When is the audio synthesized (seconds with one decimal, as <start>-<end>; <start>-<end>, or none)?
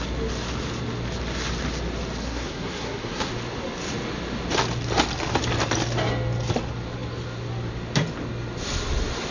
2.2-3.3